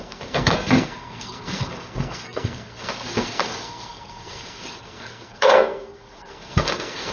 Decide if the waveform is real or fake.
fake